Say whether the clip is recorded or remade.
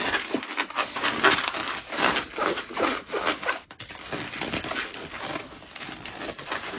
remade